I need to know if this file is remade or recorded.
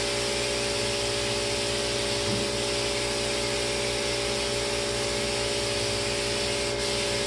recorded